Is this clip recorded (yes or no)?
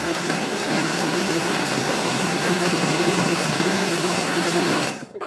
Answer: no